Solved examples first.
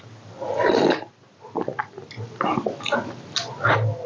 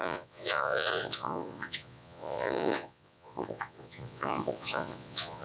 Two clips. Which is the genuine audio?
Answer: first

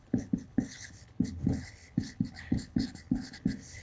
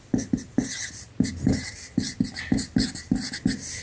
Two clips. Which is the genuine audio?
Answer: second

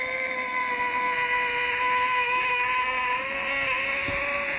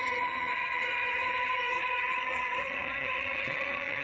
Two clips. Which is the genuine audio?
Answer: first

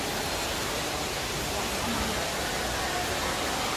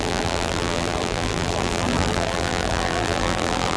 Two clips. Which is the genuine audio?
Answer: first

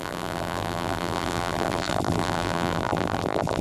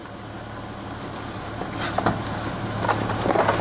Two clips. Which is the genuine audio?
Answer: second